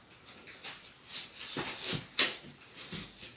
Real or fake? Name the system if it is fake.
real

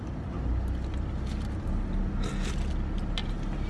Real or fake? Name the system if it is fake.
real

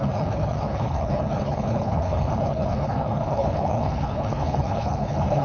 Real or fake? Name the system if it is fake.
fake, codec, HILCodec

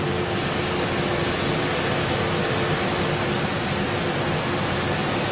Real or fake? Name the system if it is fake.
real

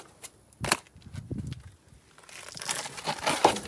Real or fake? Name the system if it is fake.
real